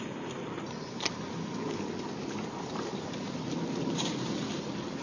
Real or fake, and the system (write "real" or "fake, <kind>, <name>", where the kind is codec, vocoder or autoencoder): real